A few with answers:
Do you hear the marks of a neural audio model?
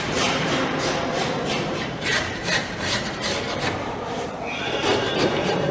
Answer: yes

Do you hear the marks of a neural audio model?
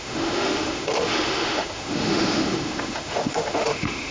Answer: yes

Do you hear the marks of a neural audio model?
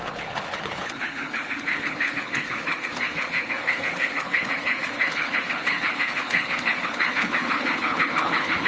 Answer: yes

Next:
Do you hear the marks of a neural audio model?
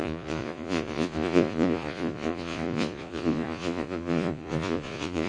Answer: yes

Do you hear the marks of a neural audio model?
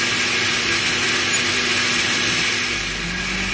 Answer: no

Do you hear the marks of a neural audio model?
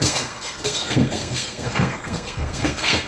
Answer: yes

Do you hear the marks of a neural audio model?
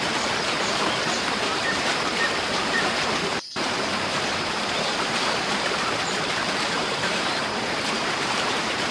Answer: yes